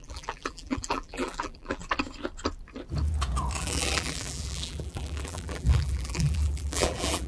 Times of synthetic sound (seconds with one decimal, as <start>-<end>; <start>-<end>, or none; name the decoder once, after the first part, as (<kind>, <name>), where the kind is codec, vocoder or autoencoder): 0.0-1.8 (vocoder, BigVGAN v2); 3.6-7.3